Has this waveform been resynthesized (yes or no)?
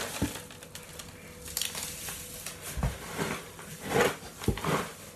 no